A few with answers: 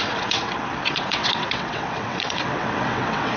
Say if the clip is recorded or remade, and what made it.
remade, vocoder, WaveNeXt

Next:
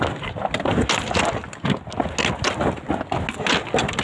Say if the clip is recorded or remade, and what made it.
recorded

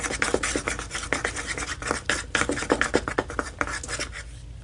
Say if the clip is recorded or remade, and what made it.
recorded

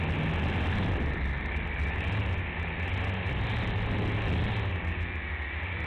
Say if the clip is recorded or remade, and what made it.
recorded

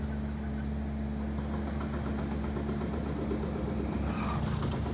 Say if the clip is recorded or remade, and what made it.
recorded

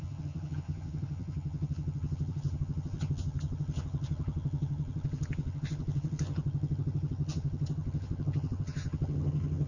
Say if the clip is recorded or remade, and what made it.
remade, vocoder, HiFi-GAN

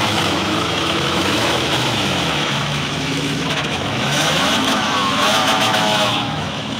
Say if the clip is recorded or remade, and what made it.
remade, autoencoder, DAC-VAE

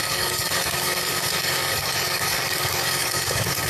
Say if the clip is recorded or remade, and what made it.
remade, codec, DAC